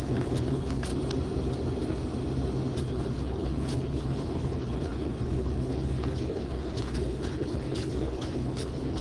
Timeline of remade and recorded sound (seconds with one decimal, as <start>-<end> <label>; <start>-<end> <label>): 0.0-0.9 remade; 0.9-2.8 recorded; 2.8-9.0 remade